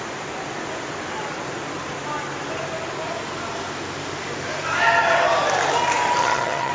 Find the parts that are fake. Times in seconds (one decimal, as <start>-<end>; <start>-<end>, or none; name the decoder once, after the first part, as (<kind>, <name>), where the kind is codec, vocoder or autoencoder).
6.2-6.7 (vocoder, HiFi-GAN)